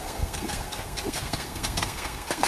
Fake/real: fake